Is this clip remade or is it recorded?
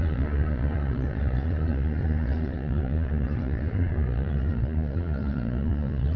remade